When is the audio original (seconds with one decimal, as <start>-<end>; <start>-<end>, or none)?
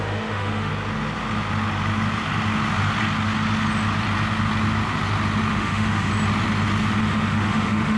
0.7-5.5; 6.1-7.0